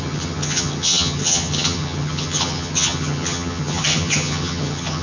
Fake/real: fake